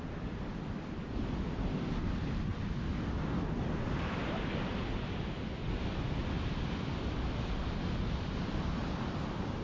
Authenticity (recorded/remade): recorded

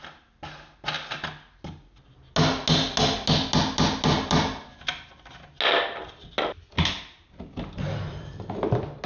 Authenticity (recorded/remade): recorded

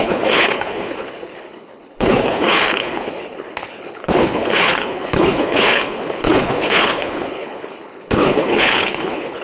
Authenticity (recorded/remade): remade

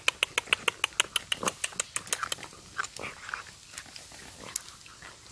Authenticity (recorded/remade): recorded